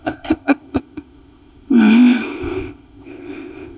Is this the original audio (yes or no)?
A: no